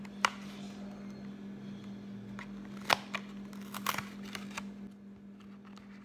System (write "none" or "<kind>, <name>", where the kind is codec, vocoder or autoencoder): none